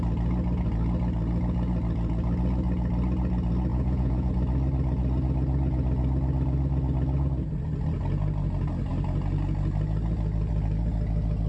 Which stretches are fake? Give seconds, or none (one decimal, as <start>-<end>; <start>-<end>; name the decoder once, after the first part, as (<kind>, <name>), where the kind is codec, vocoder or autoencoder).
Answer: 3.7-4.3 (vocoder, Vocos)